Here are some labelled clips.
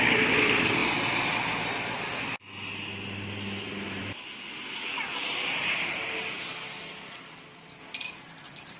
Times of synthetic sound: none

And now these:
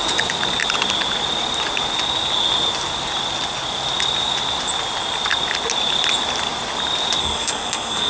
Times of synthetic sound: 7.2-8.1 (codec, SNAC)

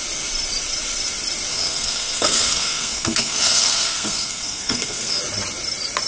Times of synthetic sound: 1.5-5.2 (codec, SNAC)

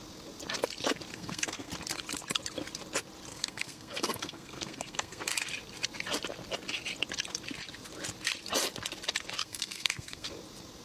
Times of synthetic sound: 1.1-1.7 (codec, SNAC); 3.3-5.2; 9.4-10.3

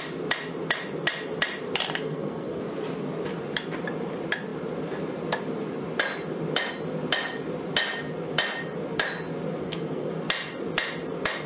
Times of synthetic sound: 2.0-2.6 (codec, SNAC); 9.6-10.1

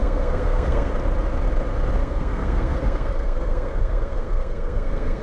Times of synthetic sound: 0.0-0.9 (codec, SNAC); 2.0-5.2

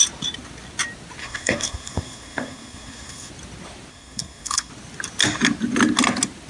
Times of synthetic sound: 1.2-3.3 (codec, SNAC); 3.9-4.7

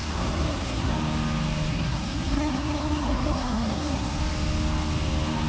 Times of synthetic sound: 0.0-0.9 (codec, SNAC); 1.7-4.2